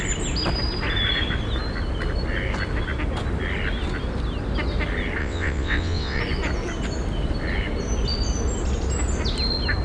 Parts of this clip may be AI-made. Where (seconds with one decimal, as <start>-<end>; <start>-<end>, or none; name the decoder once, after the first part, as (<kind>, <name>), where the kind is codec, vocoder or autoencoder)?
5.2-6.2 (vocoder, WaveNeXt)

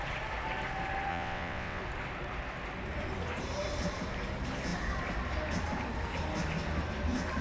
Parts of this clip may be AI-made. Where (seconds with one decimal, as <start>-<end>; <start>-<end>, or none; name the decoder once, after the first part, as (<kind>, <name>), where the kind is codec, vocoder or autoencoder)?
1.1-1.8 (vocoder, WaveNeXt)

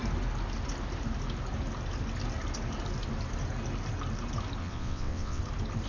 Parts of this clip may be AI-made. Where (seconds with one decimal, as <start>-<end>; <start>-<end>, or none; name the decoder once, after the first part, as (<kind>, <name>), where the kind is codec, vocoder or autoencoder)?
4.6-5.4 (vocoder, WaveNeXt)

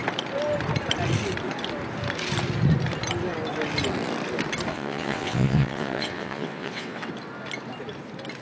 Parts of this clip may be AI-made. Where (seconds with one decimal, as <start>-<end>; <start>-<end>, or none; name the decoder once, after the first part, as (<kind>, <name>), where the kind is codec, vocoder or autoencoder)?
4.7-7.1 (vocoder, WaveNeXt)

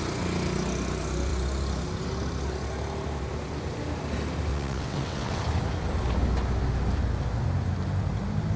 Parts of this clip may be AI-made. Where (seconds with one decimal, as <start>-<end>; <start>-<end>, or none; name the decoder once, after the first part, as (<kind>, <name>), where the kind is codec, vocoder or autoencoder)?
4.5-5.4 (vocoder, WaveNeXt)

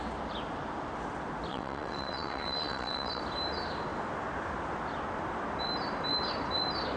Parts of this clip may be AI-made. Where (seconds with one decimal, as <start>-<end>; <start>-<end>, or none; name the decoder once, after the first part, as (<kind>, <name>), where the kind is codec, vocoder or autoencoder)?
1.5-3.2 (vocoder, WaveNeXt)

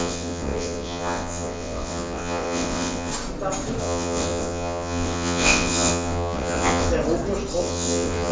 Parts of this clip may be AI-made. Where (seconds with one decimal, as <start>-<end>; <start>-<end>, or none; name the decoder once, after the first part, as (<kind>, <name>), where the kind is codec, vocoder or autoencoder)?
0.0-3.1 (vocoder, WaveNeXt); 3.8-6.9; 7.6-8.3

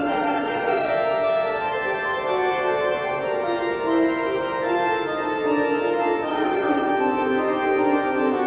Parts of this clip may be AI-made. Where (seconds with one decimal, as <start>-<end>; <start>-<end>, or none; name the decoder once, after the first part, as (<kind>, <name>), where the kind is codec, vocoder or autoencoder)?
0.0-0.9 (vocoder, WaveNeXt); 6.3-6.9